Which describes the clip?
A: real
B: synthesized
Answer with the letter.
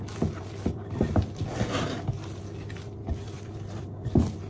A